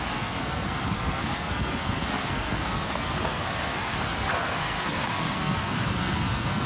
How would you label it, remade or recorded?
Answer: remade